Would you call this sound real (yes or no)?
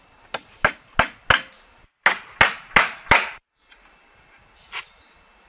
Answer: yes